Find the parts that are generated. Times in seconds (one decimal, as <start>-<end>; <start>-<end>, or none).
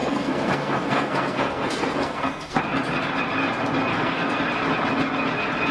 0.0-2.6; 3.9-4.4